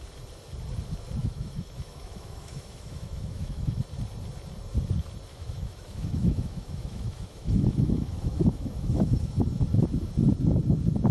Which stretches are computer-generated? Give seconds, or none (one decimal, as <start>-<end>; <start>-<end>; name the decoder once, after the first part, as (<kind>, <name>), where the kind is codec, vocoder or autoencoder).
1.2-3.8 (autoencoder, DAC-VAE); 5.3-9.3